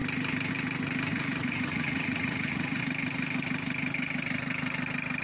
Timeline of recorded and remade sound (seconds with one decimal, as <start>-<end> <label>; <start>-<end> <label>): 0.0-1.1 recorded; 1.1-2.8 remade; 2.8-5.2 recorded